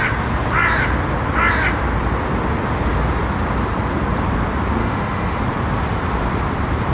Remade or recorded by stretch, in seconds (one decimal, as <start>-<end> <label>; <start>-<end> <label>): 0.0-4.8 recorded; 4.8-5.4 remade; 5.4-6.9 recorded